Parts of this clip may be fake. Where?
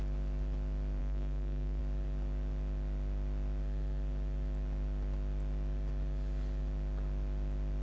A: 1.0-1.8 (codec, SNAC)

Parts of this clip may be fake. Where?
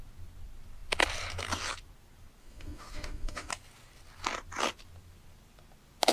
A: 2.4-3.5 (autoencoder, DAC-VAE)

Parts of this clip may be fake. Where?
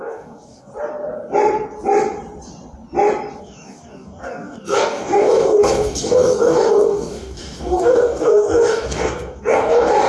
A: 0.0-0.7 (codec, DAC); 3.4-10.1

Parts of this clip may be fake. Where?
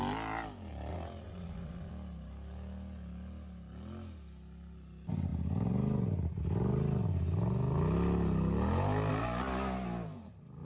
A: 0.9-1.9 (vocoder, WaveNeXt)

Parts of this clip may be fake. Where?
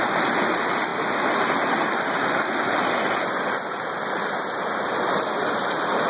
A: none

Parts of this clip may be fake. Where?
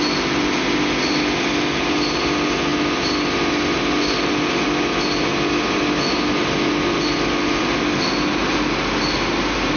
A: none